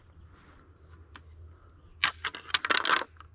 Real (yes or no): yes